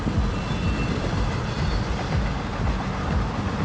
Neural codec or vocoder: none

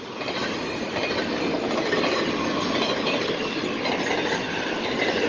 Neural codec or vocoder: none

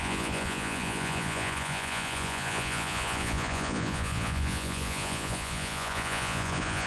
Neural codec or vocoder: vocoder, Vocos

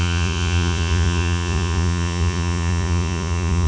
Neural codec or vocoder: vocoder, Vocos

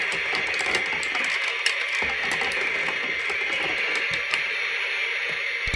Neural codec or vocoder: none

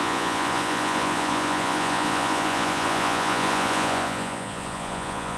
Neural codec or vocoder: vocoder, Vocos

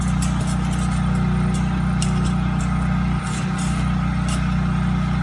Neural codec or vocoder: none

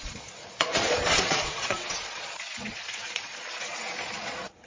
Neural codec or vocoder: vocoder, Vocos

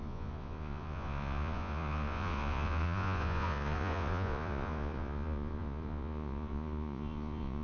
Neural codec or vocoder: vocoder, Vocos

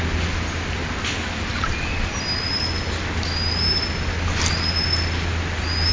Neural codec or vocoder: none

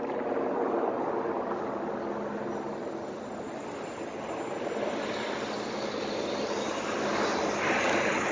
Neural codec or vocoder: none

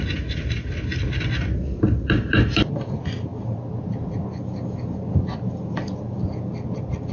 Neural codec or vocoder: none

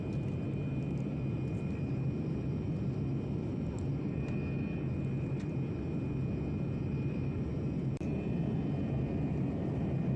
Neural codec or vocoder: none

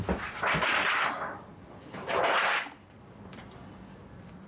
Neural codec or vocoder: none